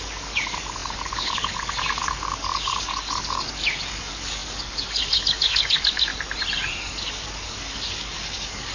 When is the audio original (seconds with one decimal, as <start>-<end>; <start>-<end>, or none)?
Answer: 6.1-6.8

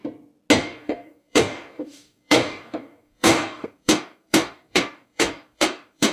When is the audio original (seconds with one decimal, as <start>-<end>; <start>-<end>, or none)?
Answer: 0.0-0.6

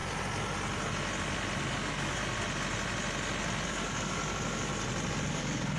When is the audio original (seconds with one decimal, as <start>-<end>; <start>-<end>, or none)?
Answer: 0.0-1.6; 2.2-3.7; 4.7-5.3

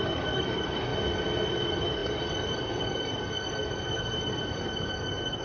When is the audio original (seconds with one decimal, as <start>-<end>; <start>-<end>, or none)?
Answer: 0.9-1.5

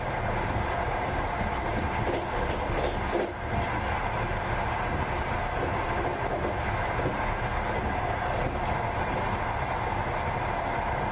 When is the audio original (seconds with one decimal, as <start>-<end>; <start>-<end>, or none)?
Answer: 0.0-11.1